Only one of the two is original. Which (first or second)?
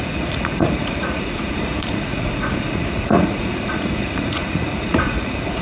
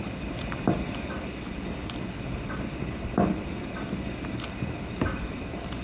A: second